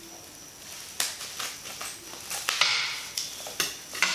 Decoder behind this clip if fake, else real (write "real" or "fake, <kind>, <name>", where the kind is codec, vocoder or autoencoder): real